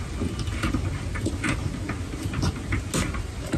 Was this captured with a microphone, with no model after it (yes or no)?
yes